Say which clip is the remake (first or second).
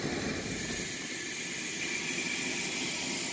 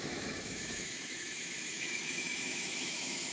second